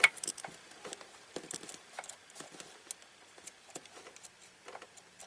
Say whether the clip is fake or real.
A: real